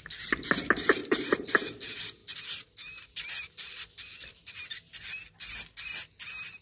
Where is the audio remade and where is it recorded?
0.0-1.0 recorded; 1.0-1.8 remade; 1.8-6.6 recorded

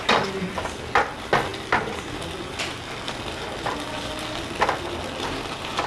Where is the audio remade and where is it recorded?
0.0-5.9 recorded